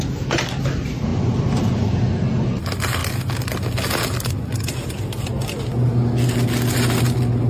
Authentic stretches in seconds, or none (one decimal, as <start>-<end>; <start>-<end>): 0.0-7.5